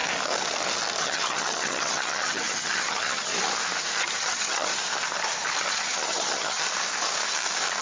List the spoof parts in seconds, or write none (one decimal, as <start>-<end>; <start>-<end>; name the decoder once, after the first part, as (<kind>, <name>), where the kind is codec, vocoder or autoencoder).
1.0-3.3 (vocoder, HiFi-GAN); 4.2-4.7; 5.6-6.6